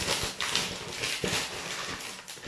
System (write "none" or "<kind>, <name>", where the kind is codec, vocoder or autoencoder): none